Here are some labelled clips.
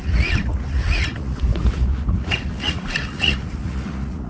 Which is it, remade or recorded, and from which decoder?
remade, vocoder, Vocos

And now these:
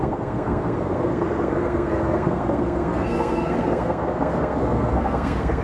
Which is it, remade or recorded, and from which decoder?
remade, codec, SNAC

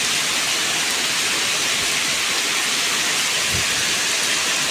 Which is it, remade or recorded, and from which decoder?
recorded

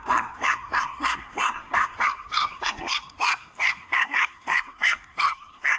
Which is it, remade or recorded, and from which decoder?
remade, codec, SNAC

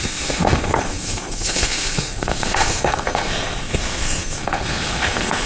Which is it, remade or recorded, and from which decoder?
remade, codec, SNAC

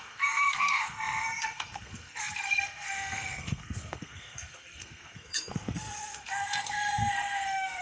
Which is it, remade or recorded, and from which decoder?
remade, codec, SNAC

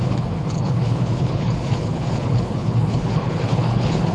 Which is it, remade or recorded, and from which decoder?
remade, codec, HILCodec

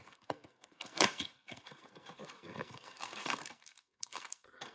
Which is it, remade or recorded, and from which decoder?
remade, codec, SNAC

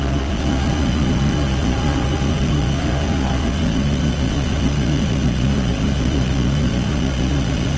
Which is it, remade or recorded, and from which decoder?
remade, vocoder, Vocos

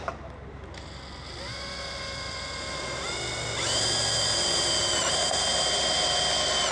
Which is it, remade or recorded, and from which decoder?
recorded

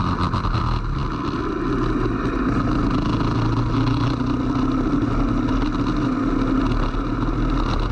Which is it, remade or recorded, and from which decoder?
recorded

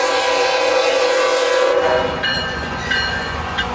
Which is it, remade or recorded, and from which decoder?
remade, vocoder, Vocos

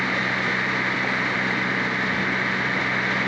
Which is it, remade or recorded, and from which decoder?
recorded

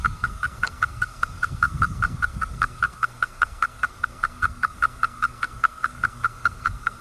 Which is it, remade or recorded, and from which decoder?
remade, codec, SNAC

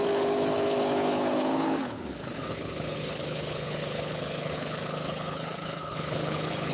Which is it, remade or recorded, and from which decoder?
remade, codec, HILCodec